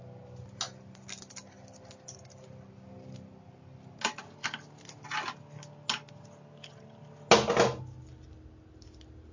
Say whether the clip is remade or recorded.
recorded